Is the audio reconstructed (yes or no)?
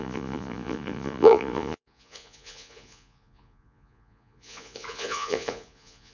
yes